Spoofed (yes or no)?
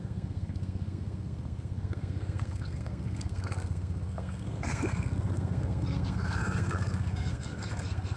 yes